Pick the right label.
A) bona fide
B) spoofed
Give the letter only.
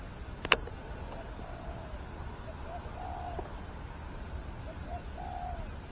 A